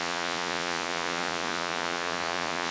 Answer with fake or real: fake